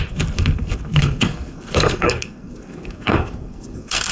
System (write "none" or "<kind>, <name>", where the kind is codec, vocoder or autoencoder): codec, SNAC